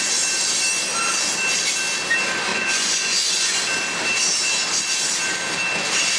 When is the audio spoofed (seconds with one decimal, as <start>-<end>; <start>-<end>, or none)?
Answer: 2.5-3.6